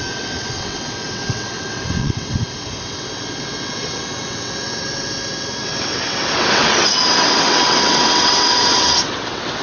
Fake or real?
fake